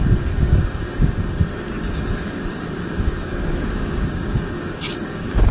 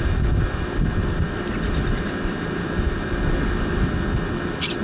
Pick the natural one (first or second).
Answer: second